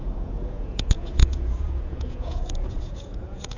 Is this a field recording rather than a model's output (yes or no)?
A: no